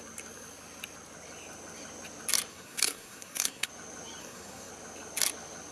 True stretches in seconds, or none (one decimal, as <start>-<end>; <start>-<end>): 0.0-2.5; 3.7-4.2; 4.7-5.7